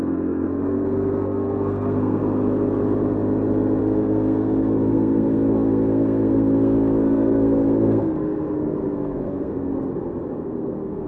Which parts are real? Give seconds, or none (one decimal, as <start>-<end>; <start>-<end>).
2.2-3.8; 9.7-10.3